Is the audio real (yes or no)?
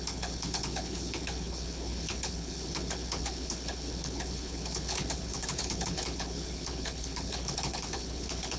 no